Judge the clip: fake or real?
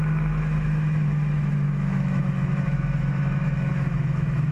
fake